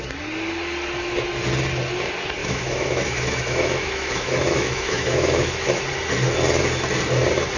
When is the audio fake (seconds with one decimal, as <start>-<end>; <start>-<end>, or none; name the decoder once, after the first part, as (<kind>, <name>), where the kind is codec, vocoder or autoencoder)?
2.4-5.8 (autoencoder, DAC-VAE)